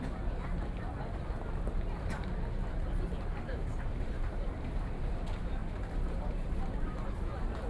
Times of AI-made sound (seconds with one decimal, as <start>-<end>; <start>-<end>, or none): 3.6-5.0; 5.6-7.3